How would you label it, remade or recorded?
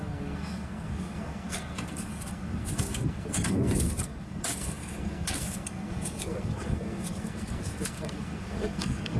remade